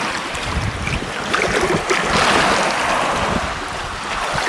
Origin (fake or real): real